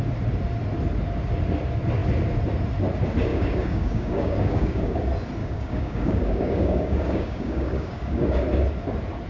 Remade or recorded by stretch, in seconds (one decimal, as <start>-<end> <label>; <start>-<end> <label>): 0.0-3.3 recorded; 3.3-5.0 remade; 5.0-5.4 recorded; 5.4-8.4 remade; 8.4-9.3 recorded